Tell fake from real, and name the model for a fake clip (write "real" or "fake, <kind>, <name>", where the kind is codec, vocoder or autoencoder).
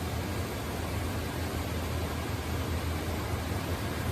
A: real